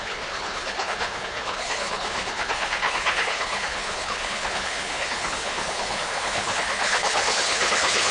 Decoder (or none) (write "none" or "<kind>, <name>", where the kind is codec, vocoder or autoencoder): codec, HILCodec